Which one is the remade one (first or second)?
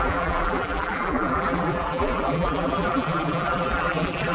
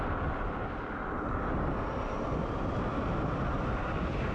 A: first